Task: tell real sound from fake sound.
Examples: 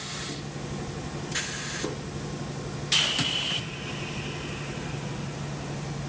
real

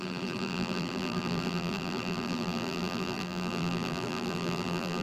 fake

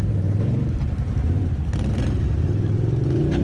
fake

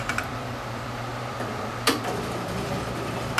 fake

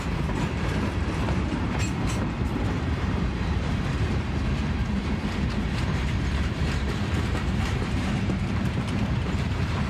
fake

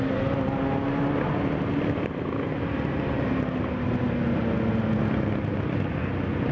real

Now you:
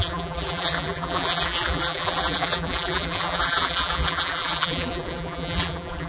fake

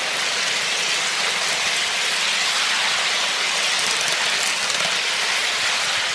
real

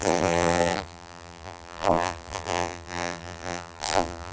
fake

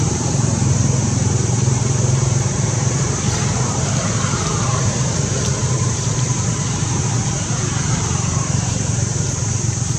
fake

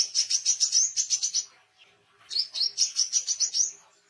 real